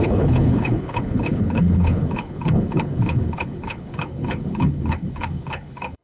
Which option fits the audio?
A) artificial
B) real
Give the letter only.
A